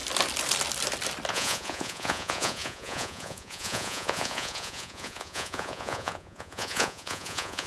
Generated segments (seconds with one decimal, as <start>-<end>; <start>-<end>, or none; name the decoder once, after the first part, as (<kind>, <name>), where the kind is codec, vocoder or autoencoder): 1.3-7.7 (vocoder, Vocos)